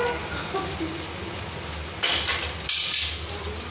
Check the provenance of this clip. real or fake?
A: real